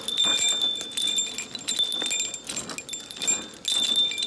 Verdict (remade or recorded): recorded